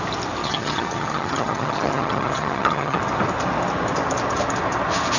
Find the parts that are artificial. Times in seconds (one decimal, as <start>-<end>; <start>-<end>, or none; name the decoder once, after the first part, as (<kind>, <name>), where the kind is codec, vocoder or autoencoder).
0.4-3.0 (vocoder, HiFi-GAN)